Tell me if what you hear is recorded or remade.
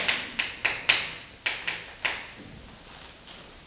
recorded